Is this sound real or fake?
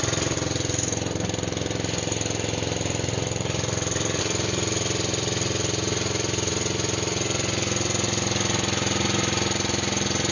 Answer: real